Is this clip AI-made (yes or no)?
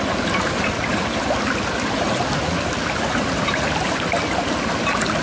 no